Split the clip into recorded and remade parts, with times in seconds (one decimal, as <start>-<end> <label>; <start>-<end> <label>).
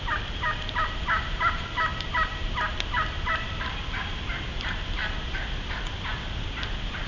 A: 0.0-7.1 recorded